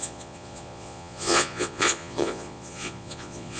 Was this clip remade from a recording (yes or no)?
yes